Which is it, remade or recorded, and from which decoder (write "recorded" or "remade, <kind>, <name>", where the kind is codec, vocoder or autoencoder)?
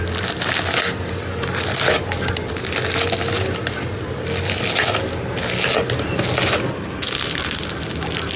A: recorded